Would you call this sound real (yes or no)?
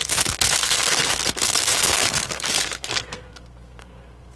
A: no